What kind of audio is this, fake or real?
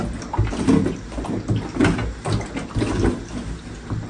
real